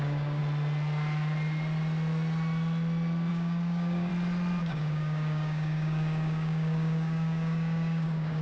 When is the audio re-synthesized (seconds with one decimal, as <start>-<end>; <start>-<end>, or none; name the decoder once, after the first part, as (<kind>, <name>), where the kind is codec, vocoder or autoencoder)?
0.0-0.4 (codec, DAC); 3.3-4.1; 4.6-8.4

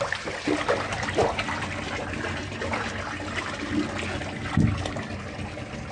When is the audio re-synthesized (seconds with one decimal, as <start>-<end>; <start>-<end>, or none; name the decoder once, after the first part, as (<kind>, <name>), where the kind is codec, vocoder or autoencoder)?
none

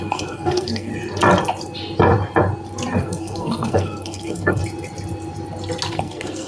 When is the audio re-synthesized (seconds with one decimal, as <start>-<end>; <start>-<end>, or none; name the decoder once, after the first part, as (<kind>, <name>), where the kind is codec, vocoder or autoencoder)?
0.0-0.9 (codec, SNAC); 3.0-4.6; 5.9-6.5

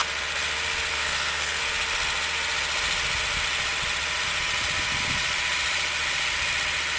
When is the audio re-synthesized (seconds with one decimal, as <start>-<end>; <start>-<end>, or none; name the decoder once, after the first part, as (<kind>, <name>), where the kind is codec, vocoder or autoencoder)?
0.9-1.6 (codec, SNAC)

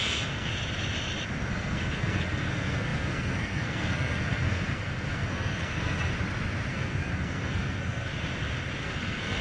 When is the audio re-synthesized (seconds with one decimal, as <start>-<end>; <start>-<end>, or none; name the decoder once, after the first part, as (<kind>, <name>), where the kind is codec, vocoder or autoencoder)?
0.0-0.5 (codec, SNAC); 1.5-6.1; 6.7-8.1; 8.8-9.4

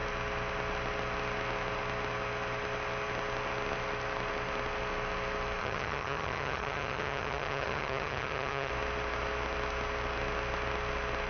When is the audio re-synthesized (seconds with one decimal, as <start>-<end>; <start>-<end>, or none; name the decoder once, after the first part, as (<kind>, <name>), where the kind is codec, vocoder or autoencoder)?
5.6-8.7 (vocoder, HiFi-GAN)